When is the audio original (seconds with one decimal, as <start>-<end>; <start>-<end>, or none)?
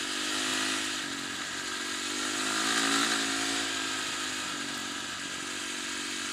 0.0-6.3